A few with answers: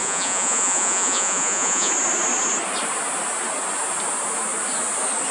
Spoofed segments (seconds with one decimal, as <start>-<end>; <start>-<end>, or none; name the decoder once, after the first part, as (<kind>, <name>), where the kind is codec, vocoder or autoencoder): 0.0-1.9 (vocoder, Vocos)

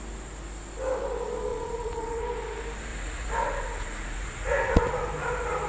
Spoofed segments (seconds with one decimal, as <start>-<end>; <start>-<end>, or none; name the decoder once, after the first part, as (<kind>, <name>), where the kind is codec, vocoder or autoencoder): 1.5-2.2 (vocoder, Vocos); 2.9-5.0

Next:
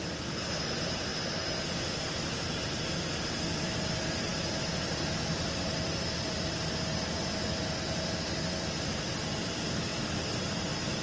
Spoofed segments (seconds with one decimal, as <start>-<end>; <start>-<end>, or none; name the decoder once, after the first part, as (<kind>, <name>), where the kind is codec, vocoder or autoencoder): none

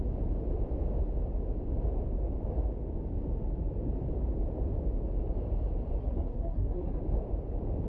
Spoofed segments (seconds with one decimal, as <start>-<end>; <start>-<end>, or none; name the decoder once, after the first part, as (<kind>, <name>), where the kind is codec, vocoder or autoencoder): 6.0-7.0 (codec, SNAC)

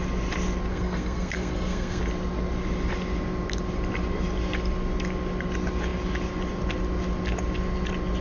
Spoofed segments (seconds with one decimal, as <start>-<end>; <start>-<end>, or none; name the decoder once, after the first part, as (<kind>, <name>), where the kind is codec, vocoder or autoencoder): 0.7-2.0 (codec, SNAC)

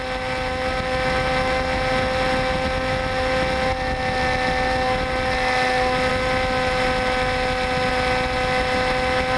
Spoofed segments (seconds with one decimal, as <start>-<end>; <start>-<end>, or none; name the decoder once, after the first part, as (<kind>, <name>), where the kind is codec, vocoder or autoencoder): none

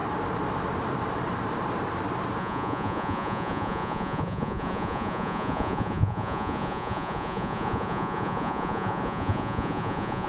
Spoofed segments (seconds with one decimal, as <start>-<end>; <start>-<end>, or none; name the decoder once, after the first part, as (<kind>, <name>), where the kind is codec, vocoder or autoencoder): 2.4-10.3 (vocoder, Vocos)

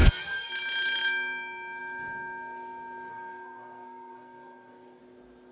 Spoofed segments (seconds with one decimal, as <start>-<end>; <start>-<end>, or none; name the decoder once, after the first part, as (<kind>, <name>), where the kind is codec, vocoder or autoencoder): 0.0-0.5 (codec, SNAC); 3.1-5.0